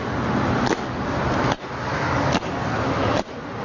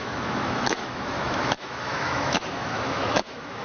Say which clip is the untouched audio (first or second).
first